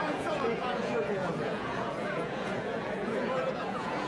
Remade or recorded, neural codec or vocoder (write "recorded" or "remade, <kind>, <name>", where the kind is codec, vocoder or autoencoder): remade, vocoder, Vocos